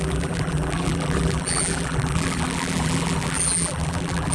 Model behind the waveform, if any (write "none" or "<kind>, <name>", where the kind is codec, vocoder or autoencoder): vocoder, BigVGAN v2